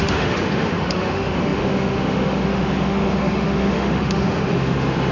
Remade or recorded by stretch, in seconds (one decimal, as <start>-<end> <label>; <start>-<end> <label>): 0.0-5.1 remade